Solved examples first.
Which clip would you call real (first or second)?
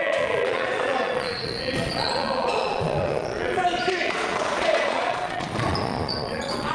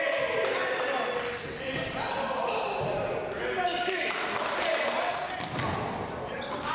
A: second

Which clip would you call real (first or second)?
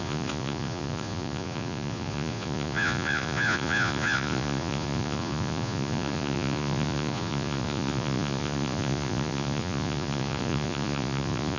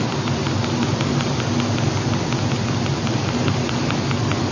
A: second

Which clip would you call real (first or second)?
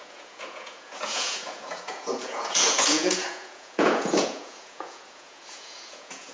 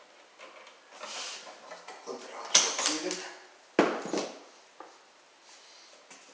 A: second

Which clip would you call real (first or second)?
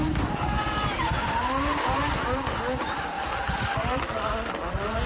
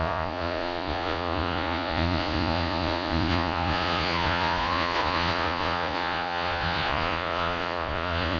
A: first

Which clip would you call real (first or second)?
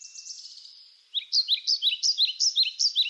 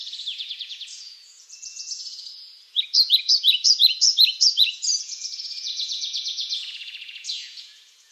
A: first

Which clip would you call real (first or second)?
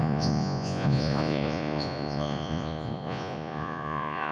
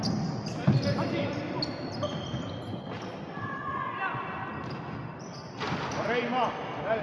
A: second